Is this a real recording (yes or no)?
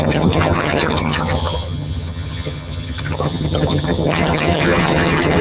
no